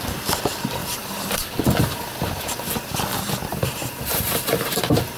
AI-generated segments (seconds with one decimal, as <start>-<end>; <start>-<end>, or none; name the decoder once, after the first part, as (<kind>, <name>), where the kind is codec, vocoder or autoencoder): 0.8-1.6 (vocoder, BigVGAN v2); 3.5-4.8